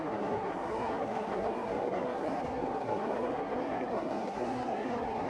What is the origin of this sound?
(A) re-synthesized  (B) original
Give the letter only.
A